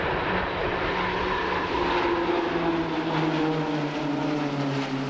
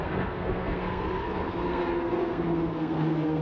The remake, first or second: second